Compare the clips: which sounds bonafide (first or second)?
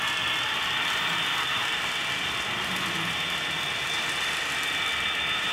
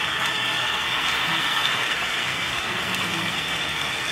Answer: first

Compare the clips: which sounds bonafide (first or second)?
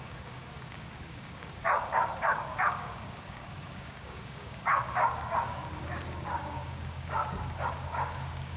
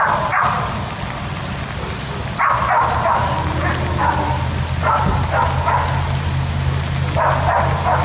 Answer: second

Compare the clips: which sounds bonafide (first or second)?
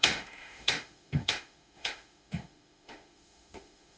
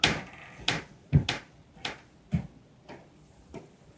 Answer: second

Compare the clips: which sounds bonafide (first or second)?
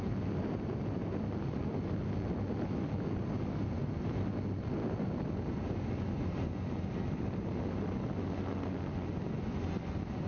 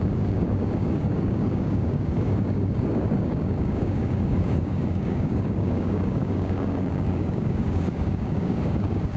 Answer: first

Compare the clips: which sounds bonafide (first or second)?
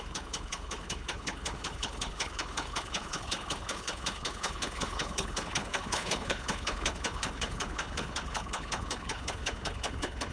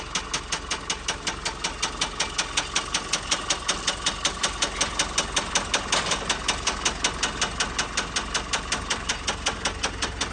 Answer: second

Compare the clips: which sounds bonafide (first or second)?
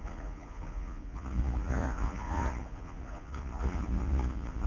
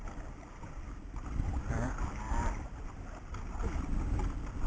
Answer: second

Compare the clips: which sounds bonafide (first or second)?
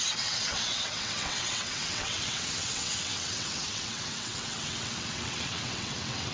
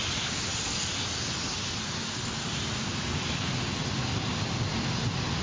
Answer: second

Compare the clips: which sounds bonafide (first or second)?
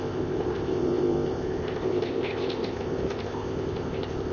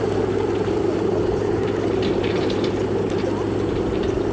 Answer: second